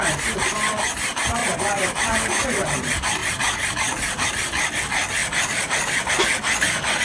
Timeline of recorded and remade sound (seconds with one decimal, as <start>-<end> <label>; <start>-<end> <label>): 0.0-1.4 recorded; 1.4-2.1 remade; 2.1-5.2 recorded; 5.2-6.1 remade; 6.1-7.0 recorded